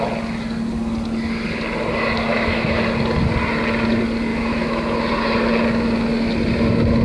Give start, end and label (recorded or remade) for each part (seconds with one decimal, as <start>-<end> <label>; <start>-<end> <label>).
0.0-2.3 recorded; 2.3-2.8 remade; 2.8-4.3 recorded; 4.3-5.0 remade; 5.0-7.0 recorded